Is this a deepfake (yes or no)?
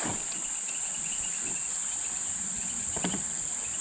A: yes